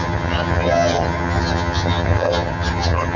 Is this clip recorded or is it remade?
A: remade